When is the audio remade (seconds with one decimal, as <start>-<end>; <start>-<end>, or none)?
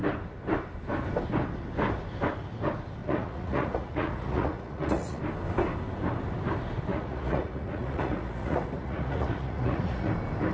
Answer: 3.0-5.2; 6.9-10.1